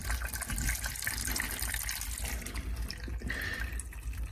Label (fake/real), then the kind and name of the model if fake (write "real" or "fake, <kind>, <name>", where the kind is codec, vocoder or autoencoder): real